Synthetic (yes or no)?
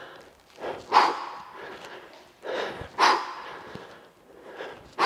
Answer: no